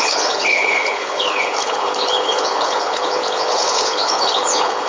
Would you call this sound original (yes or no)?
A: no